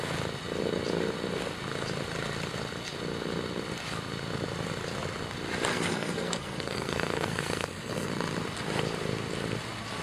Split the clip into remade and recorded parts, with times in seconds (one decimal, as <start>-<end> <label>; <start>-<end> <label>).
0.0-5.7 recorded; 5.7-8.1 remade; 8.1-10.0 recorded